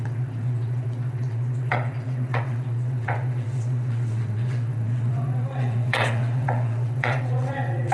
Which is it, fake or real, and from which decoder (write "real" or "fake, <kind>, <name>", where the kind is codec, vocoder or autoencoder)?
fake, vocoder, WaveNeXt